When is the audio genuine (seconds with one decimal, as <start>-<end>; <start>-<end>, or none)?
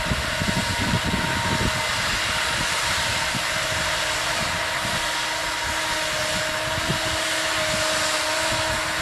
0.0-9.0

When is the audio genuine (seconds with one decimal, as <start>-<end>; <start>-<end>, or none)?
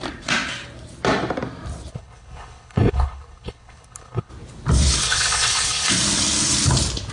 0.0-1.9; 4.3-5.0; 5.9-7.1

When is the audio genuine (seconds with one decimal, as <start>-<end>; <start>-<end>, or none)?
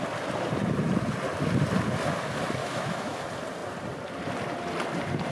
0.0-2.6; 3.2-5.3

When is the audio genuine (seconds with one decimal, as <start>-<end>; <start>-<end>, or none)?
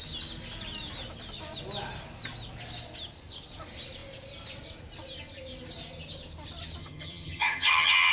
0.0-6.8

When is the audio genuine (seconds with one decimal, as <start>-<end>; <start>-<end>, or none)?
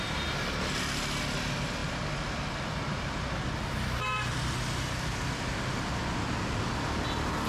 0.0-1.8; 2.5-7.5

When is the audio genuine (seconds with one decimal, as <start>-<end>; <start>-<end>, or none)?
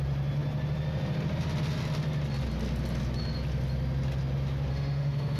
0.0-4.7